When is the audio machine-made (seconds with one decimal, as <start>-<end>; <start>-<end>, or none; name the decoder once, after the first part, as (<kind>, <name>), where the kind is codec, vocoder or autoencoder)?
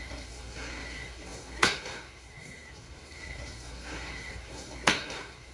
0.0-5.5 (codec, SNAC)